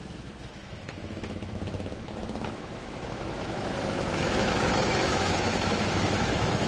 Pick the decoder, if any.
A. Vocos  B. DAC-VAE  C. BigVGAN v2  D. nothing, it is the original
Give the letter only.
B